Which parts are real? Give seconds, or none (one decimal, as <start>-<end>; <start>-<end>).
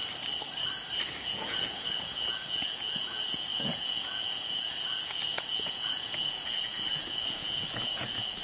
0.0-1.3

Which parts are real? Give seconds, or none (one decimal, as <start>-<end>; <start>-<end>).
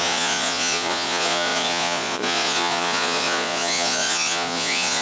none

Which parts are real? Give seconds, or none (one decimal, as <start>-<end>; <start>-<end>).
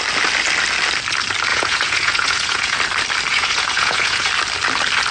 0.0-1.5; 2.8-3.3; 4.3-5.1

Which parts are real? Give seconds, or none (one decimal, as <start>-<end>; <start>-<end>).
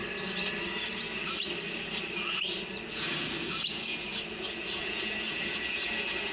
0.0-2.9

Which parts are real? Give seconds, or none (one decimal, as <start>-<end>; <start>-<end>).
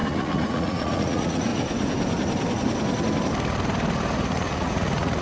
1.5-4.3